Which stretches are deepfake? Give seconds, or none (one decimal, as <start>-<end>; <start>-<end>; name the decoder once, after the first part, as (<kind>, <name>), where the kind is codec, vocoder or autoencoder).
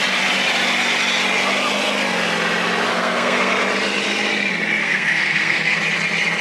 2.9-3.5 (codec, SNAC); 4.8-5.8